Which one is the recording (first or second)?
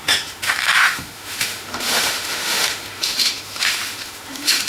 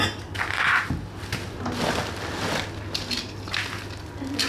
second